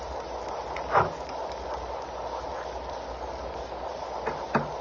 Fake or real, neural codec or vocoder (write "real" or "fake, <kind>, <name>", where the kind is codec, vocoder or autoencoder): real